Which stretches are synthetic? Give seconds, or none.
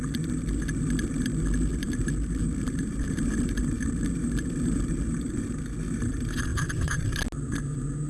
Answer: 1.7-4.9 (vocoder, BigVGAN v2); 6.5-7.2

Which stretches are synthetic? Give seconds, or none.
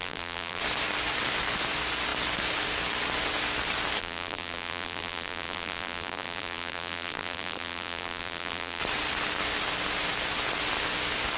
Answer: 0.0-0.6 (vocoder, BigVGAN v2); 4.0-8.8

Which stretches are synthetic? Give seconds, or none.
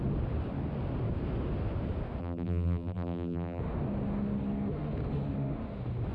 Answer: 2.2-3.6 (vocoder, BigVGAN v2)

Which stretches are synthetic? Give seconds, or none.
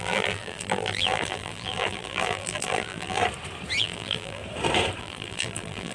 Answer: 0.0-3.2 (vocoder, BigVGAN v2); 3.8-4.4; 5.0-5.9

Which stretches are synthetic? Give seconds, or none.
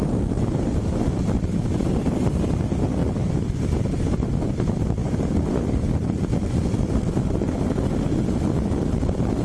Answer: 5.0-7.3 (vocoder, BigVGAN v2)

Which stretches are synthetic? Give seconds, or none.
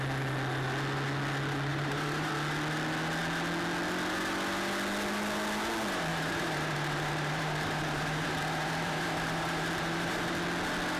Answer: 1.7-2.3 (vocoder, BigVGAN v2); 6.1-10.3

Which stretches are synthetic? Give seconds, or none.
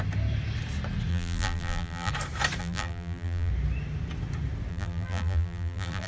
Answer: 1.1-2.1 (vocoder, BigVGAN v2); 2.6-3.5; 4.7-6.1